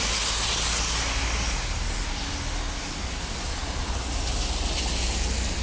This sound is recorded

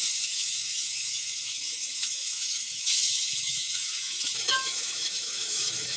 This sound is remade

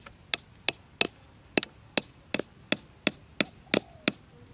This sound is recorded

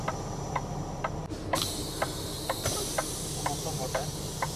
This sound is remade